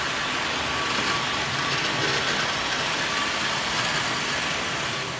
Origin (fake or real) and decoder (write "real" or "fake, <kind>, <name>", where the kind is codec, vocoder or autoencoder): real